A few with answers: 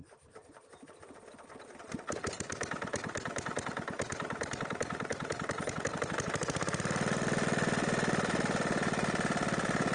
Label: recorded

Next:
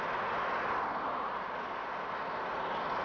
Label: recorded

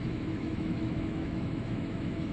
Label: remade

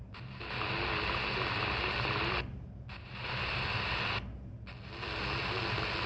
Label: recorded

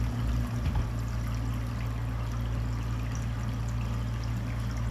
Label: recorded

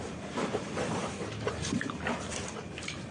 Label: remade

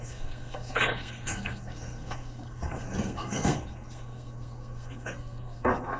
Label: remade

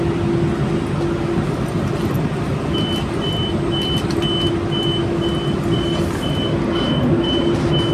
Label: recorded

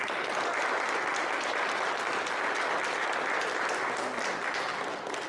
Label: recorded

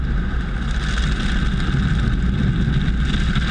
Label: recorded